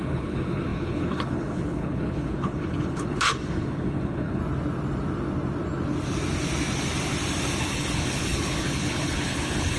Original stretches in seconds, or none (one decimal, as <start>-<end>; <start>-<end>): 4.4-7.6